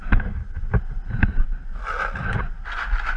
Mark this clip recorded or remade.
recorded